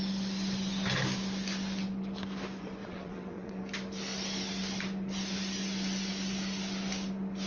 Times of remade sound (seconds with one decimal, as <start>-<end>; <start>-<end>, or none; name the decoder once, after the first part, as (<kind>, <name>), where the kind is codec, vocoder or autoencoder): 2.8-3.6 (vocoder, WaveNeXt)